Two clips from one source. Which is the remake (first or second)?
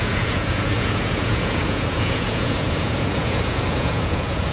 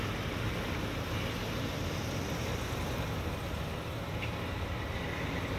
first